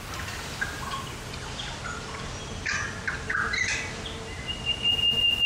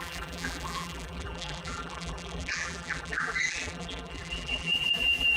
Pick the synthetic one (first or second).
second